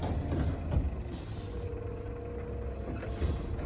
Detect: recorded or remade recorded